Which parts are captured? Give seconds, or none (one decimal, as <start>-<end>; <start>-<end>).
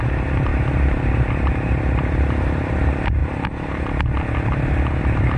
0.0-5.4